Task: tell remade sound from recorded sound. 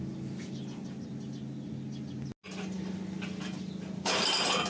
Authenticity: recorded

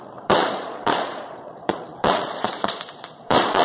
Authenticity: remade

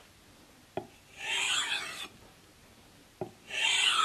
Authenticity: recorded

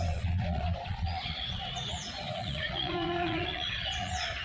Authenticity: remade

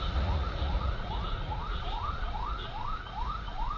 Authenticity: remade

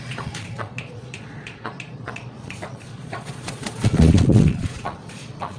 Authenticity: remade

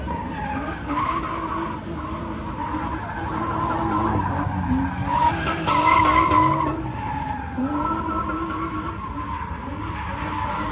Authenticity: recorded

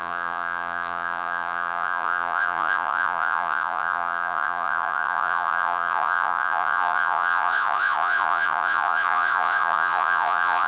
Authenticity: remade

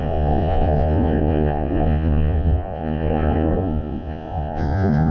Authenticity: remade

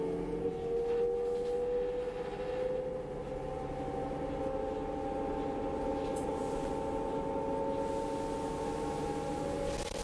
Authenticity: recorded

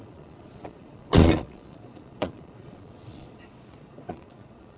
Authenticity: remade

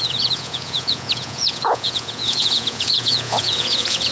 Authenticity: remade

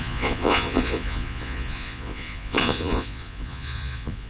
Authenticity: remade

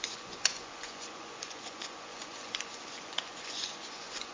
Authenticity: remade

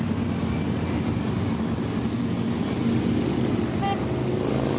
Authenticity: recorded